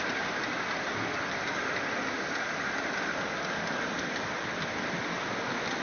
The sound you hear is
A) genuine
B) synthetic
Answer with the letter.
A